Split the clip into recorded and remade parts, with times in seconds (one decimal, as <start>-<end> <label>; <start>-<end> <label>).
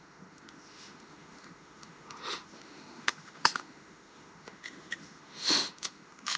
0.0-6.4 remade